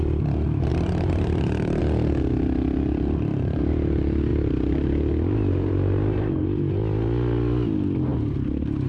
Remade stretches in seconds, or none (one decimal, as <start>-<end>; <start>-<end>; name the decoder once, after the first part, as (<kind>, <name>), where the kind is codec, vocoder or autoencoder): 0.7-1.8 (vocoder, BigVGAN v2); 4.3-6.3